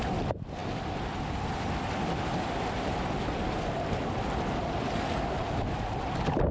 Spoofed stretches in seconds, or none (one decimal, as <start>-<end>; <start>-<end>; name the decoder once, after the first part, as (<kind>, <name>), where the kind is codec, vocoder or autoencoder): none